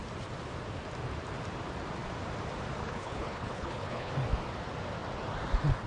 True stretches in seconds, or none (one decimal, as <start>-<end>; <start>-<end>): 0.0-2.8; 4.1-5.9